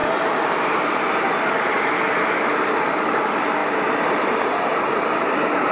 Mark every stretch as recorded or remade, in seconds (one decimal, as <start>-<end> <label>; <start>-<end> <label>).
0.0-5.7 recorded

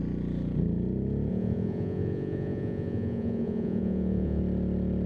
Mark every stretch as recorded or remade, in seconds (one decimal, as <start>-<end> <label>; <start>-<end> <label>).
0.0-1.3 recorded; 1.3-4.4 remade; 4.4-5.1 recorded

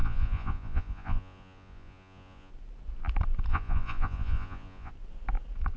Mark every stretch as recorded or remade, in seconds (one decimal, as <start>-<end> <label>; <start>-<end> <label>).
0.0-2.5 remade; 2.5-3.5 recorded; 3.5-4.9 remade; 4.9-5.8 recorded

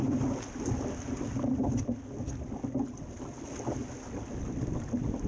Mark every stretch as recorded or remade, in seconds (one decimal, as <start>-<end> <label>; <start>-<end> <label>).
0.0-5.3 recorded

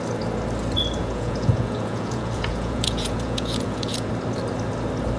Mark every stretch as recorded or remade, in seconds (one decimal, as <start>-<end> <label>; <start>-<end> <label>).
0.0-1.0 recorded; 1.0-4.1 remade; 4.1-5.2 recorded

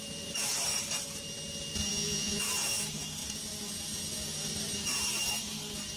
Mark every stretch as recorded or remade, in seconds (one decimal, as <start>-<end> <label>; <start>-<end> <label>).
0.0-1.9 recorded; 1.9-2.4 remade; 2.4-6.0 recorded

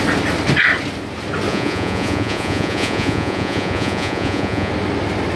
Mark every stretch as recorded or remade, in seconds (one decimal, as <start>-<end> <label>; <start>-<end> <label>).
0.0-1.5 recorded; 1.5-4.7 remade; 4.7-5.4 recorded